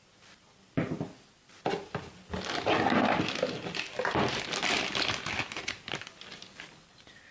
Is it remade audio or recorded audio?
recorded